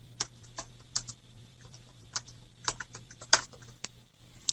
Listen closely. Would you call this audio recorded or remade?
remade